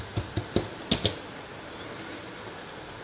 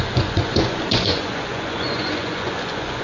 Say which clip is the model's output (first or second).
second